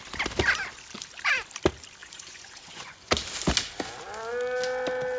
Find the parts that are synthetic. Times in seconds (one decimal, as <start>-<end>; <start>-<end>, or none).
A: 2.0-3.1